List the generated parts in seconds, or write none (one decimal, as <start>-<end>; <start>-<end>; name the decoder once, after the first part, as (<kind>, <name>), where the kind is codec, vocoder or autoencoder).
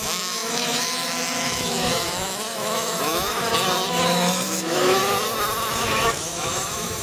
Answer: 0.0-3.5 (autoencoder, DAC-VAE); 4.1-5.0; 5.7-7.0